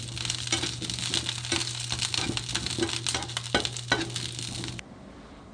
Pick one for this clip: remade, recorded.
recorded